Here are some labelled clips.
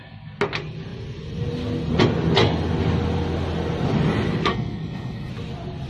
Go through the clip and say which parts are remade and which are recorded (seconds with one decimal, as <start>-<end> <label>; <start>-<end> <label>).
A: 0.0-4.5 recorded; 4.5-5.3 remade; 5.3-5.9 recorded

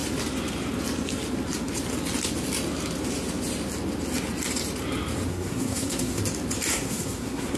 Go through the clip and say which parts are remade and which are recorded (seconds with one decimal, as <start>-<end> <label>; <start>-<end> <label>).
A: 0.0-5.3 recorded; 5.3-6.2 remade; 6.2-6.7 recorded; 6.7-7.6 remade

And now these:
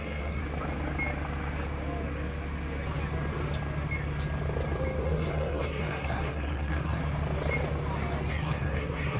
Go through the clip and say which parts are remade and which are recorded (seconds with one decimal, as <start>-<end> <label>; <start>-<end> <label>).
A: 0.0-0.4 remade; 0.4-5.0 recorded; 5.0-7.0 remade; 7.0-8.3 recorded; 8.3-9.2 remade

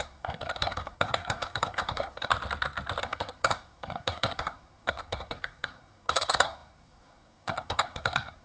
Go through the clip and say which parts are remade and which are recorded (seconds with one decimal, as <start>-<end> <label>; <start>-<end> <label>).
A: 0.0-2.3 remade; 2.3-3.0 recorded; 3.0-8.4 remade

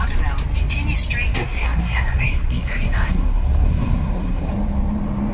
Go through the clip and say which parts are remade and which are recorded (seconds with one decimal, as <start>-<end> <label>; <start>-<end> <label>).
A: 0.0-1.3 recorded; 1.3-4.5 remade; 4.5-5.3 recorded

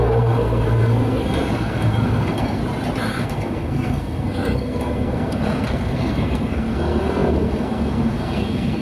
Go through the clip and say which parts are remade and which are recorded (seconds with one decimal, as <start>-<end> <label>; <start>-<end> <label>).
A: 0.0-2.6 remade; 2.6-3.1 recorded; 3.1-8.8 remade